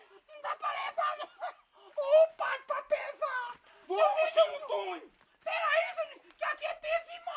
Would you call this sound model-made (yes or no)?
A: no